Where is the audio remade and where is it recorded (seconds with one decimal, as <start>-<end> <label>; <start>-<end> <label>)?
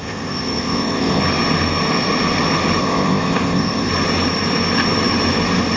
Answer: 0.0-1.2 remade; 1.2-2.8 recorded; 2.8-3.9 remade; 3.9-5.8 recorded